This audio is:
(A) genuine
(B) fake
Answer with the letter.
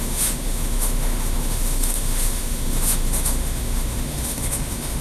B